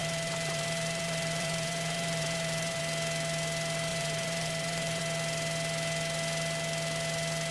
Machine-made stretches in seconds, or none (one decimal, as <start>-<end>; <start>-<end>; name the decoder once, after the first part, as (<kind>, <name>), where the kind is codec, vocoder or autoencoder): 0.0-2.8 (vocoder, BigVGAN v2); 3.9-5.0